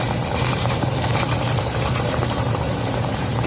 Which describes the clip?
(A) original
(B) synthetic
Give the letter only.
B